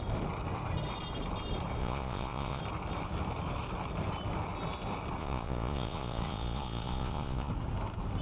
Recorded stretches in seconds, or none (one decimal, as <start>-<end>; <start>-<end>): 0.0-1.8; 2.6-5.2; 7.5-8.2